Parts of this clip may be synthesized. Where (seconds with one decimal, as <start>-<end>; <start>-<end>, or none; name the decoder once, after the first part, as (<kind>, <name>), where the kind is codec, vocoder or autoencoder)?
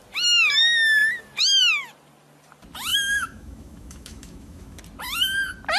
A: 2.9-4.8 (autoencoder, DAC-VAE)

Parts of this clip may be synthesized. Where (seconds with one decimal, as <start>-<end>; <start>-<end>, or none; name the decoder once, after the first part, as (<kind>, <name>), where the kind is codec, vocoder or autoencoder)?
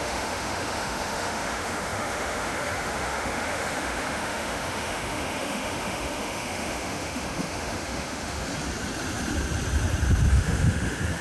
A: 0.0-8.5 (autoencoder, DAC-VAE); 10.3-11.2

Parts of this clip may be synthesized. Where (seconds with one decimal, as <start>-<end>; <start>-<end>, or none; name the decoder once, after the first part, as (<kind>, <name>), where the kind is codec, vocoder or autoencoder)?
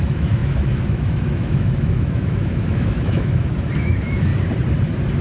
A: 0.0-4.3 (autoencoder, DAC-VAE)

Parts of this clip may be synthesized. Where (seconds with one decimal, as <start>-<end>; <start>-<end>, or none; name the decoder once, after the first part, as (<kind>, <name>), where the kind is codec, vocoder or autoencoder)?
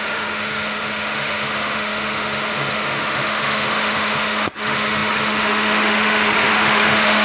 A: 0.0-7.2 (autoencoder, DAC-VAE)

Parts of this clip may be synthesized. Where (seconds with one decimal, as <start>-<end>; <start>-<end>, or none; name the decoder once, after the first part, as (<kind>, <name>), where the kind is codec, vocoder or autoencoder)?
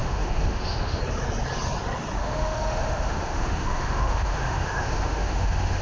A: 0.0-1.0 (autoencoder, DAC-VAE); 2.2-5.8